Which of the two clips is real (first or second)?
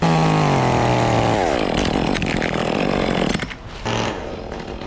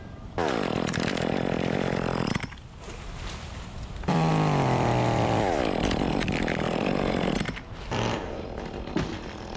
first